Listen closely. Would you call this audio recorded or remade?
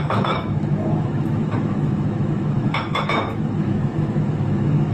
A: remade